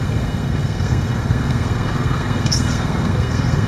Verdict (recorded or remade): remade